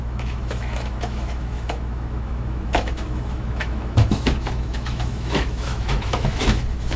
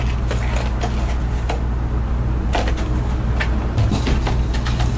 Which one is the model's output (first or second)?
first